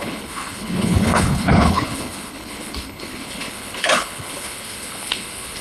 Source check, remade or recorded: remade